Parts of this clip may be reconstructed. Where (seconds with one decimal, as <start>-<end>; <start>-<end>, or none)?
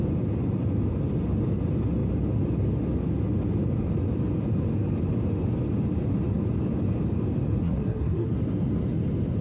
7.6-8.3